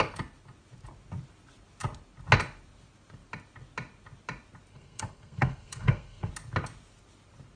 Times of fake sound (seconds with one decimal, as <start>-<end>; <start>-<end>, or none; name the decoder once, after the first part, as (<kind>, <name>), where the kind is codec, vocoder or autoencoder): 4.7-6.3 (codec, SNAC)